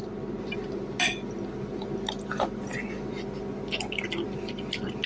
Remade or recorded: recorded